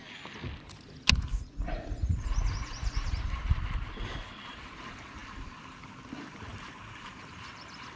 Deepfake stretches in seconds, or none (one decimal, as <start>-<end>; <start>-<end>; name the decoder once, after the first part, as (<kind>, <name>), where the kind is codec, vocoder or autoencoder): 1.3-3.3 (vocoder, Vocos)